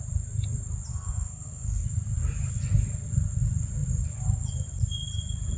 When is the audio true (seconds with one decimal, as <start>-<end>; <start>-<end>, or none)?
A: 0.0-0.9; 1.8-5.6